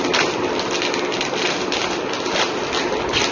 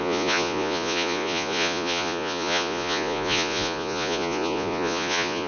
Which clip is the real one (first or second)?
first